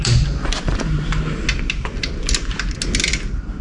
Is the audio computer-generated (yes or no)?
no